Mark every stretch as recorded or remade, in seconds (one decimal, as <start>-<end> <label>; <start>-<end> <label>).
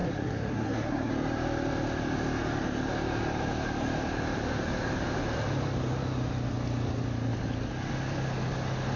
0.0-1.1 remade; 1.1-9.0 recorded